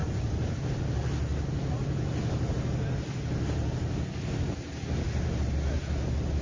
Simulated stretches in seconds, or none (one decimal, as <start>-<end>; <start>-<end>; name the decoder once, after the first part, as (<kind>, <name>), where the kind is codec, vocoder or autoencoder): 0.0-0.7 (vocoder, BigVGAN v2); 1.3-2.5